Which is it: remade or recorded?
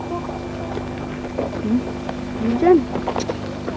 recorded